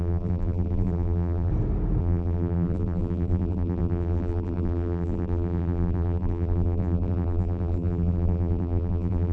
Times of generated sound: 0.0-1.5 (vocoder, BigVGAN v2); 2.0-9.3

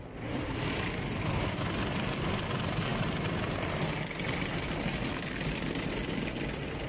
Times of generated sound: none